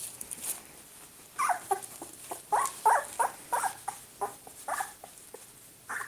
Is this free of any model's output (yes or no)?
yes